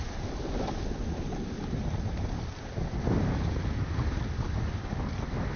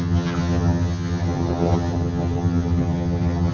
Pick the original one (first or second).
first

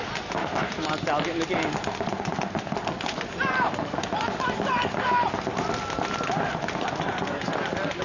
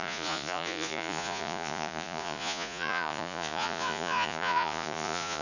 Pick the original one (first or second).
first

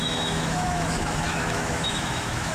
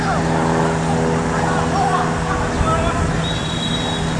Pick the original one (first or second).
second